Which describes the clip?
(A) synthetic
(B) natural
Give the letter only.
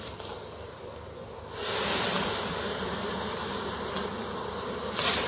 B